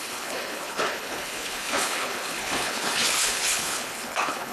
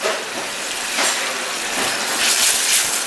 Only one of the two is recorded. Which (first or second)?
second